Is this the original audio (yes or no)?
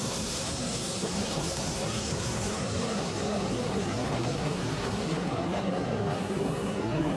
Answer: no